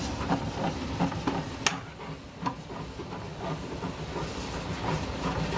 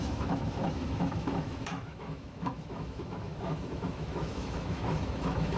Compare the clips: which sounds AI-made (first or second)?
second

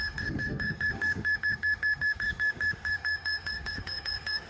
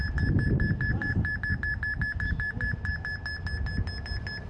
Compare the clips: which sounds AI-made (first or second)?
first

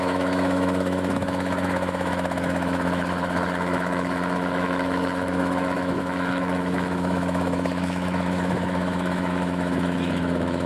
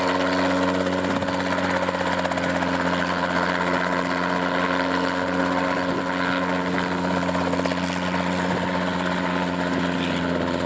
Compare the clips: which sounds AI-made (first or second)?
first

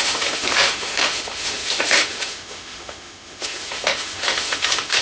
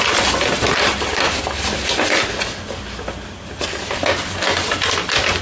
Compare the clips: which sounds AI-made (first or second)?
first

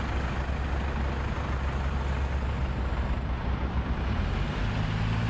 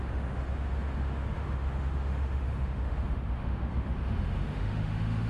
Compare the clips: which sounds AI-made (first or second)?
second